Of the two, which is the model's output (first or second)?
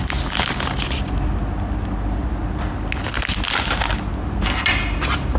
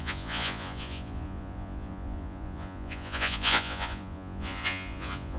second